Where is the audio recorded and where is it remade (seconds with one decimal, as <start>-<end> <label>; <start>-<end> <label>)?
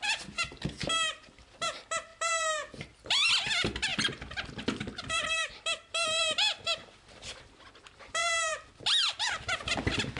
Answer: 0.0-2.1 recorded; 2.1-3.3 remade; 3.3-3.9 recorded; 3.9-7.6 remade; 7.6-8.2 recorded; 8.2-9.7 remade; 9.7-10.2 recorded